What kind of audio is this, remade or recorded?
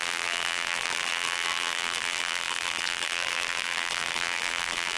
remade